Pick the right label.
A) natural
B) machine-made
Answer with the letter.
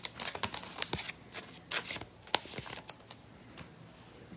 A